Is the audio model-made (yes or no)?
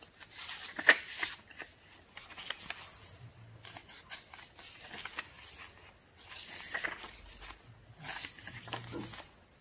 no